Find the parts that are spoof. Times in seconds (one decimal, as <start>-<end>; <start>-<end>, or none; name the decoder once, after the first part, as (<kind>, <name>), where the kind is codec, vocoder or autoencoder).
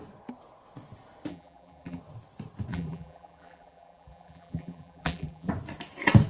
1.3-2.0 (vocoder, BigVGAN v2); 2.7-5.5